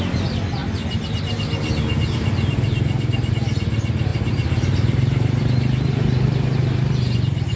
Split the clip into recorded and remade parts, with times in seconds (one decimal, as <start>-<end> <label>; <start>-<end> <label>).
0.0-7.6 recorded